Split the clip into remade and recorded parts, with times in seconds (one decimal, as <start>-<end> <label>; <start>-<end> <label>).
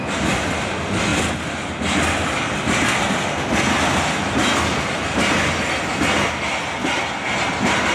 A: 0.0-7.9 recorded